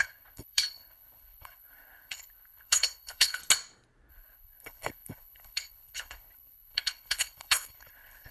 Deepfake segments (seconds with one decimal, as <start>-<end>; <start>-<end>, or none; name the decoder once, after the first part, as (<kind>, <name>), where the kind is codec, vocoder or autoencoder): 0.0-3.4 (codec, HILCodec); 4.1-8.3